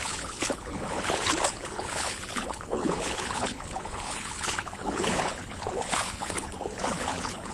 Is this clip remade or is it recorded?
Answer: remade